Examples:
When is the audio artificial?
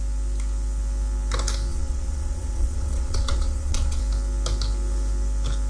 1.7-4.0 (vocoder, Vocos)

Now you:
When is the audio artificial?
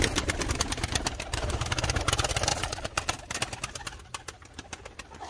2.5-3.2 (vocoder, Vocos)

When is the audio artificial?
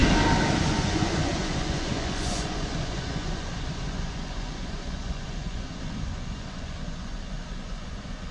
0.6-8.3 (vocoder, Vocos)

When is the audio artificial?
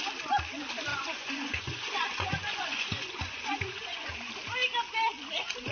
0.9-4.3 (vocoder, Vocos)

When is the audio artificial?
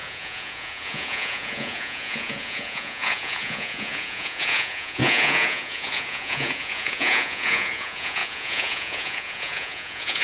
0.0-10.2 (vocoder, Vocos)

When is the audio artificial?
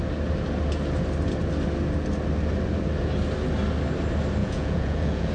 4.4-5.3 (vocoder, Vocos)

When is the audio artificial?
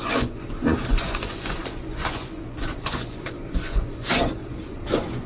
0.0-5.3 (vocoder, Vocos)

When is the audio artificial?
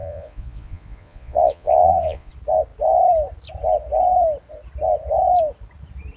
0.0-2.3 (vocoder, Vocos)